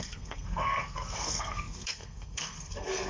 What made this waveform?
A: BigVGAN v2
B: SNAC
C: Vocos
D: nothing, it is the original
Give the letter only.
B